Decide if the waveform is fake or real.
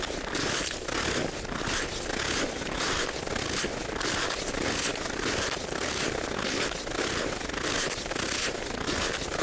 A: real